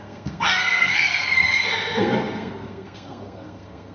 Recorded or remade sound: remade